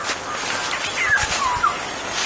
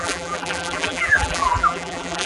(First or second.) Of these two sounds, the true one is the first